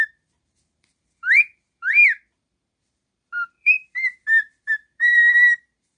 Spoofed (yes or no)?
yes